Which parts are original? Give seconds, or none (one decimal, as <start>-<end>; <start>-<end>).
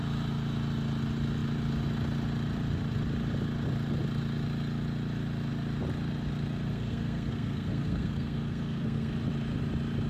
0.0-6.7; 9.1-10.1